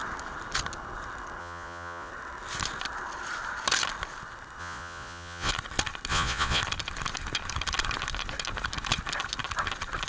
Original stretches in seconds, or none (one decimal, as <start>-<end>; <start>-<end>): 0.0-1.4; 2.1-4.6; 5.5-6.1; 6.6-10.1